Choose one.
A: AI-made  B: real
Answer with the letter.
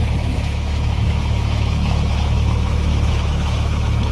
A